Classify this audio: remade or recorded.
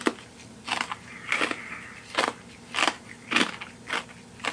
recorded